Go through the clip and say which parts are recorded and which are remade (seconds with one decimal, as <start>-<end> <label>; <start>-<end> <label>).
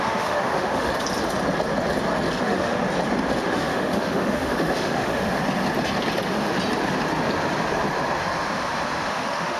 0.0-0.9 remade; 0.9-2.4 recorded; 2.4-2.8 remade; 2.8-3.4 recorded; 3.4-5.4 remade; 5.4-9.1 recorded; 9.1-9.6 remade